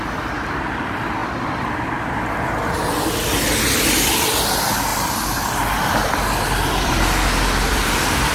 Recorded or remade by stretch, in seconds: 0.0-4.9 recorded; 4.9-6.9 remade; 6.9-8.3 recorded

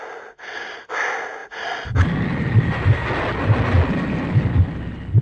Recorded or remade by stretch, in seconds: 0.0-5.2 recorded

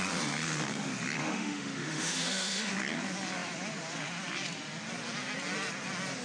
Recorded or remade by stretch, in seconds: 0.0-1.2 recorded; 1.2-2.7 remade; 2.7-6.2 recorded